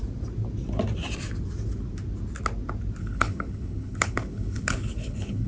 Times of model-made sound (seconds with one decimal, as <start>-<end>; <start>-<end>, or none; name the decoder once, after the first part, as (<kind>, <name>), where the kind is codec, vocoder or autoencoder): 3.0-5.5 (codec, HILCodec)